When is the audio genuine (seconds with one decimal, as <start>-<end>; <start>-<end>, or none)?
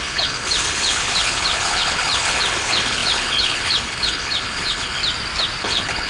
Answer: 5.0-5.6